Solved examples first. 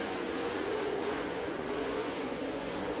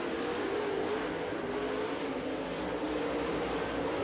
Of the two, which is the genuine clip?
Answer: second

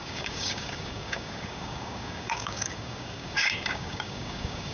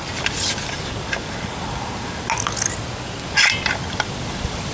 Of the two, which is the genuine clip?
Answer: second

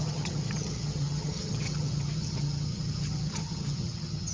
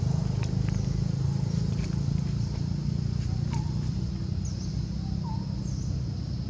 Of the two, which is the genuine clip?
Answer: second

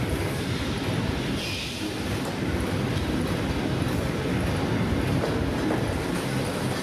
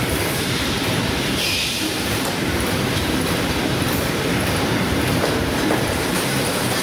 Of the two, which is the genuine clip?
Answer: first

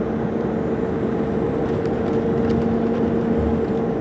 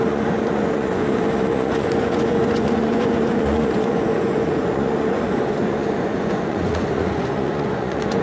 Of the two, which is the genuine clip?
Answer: first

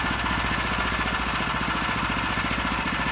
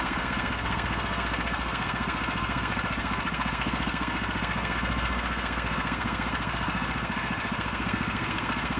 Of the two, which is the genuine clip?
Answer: first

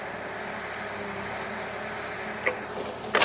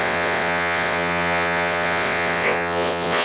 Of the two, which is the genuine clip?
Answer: first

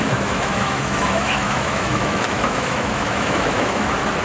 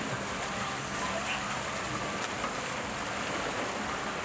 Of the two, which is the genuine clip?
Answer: second